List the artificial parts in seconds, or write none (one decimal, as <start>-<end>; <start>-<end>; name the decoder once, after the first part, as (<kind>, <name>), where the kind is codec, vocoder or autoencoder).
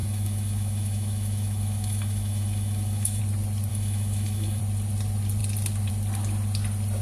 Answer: 0.0-3.2 (autoencoder, DAC-VAE); 3.7-4.6